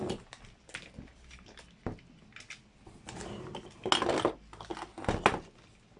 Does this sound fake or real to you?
real